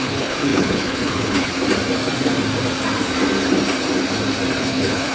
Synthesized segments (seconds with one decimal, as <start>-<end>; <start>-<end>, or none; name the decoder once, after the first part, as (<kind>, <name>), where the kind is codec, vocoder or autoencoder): 0.0-1.5 (codec, HILCodec); 4.6-5.1